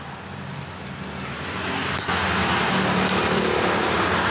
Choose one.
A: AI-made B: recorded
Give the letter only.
B